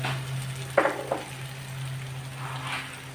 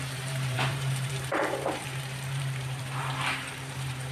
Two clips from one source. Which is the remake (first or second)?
second